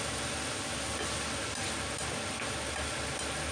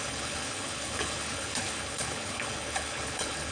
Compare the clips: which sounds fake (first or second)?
second